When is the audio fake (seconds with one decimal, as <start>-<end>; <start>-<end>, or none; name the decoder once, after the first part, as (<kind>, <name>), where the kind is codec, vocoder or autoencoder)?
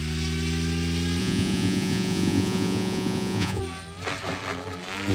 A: 1.2-3.6 (vocoder, Vocos)